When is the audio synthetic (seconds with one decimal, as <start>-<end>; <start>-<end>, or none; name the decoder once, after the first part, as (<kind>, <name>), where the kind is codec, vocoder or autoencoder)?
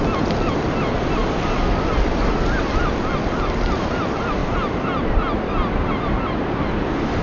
none